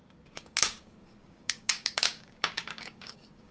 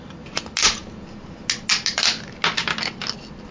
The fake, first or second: first